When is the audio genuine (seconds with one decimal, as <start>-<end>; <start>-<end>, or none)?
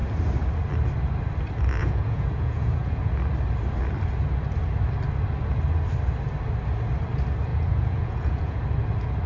0.0-1.8; 3.0-7.5; 8.6-9.3